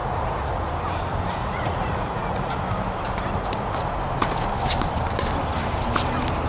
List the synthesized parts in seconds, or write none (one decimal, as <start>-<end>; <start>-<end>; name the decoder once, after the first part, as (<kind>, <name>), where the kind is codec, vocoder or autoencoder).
0.0-0.7 (vocoder, Vocos); 1.4-2.5